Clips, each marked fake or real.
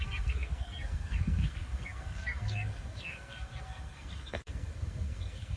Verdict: fake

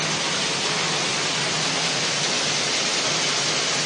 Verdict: real